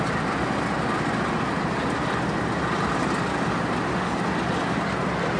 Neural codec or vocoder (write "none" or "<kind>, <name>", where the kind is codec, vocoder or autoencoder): none